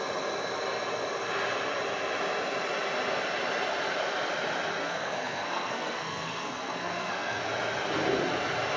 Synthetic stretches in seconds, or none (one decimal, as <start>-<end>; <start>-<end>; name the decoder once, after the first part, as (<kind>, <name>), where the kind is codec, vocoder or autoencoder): 4.8-7.5 (codec, SNAC)